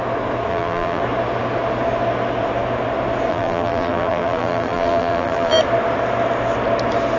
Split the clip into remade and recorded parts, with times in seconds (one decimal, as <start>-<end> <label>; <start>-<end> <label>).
0.0-0.5 recorded; 0.5-1.0 remade; 1.0-3.3 recorded; 3.3-5.6 remade; 5.6-7.2 recorded